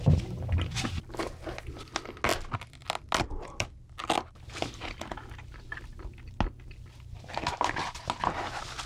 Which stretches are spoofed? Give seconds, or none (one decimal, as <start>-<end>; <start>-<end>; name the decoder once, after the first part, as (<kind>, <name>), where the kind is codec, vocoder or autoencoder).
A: none